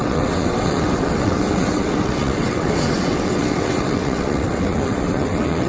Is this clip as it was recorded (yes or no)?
no